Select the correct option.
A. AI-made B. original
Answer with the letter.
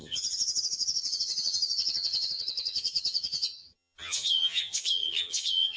A